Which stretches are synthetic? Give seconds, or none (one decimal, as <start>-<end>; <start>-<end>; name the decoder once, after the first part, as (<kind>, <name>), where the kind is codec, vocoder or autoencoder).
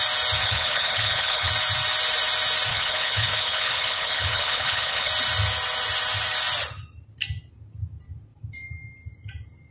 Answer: 0.4-1.5 (codec, HILCodec); 2.7-5.1